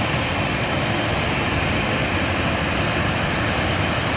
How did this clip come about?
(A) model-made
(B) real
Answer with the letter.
B